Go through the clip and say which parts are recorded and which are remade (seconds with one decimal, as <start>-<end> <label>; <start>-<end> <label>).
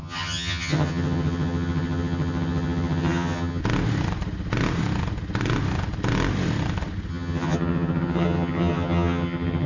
0.0-3.6 remade; 3.6-7.1 recorded; 7.1-9.7 remade